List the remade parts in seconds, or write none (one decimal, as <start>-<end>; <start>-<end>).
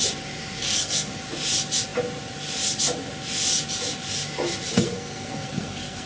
0.6-1.1; 4.7-6.1